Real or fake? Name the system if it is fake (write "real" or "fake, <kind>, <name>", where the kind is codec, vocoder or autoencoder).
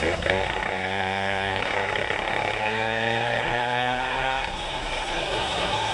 fake, codec, SNAC